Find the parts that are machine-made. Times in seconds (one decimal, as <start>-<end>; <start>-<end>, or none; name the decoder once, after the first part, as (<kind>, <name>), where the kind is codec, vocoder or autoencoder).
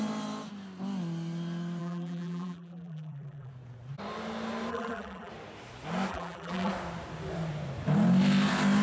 1.8-3.5 (vocoder, BigVGAN v2); 4.7-5.3; 6.1-6.7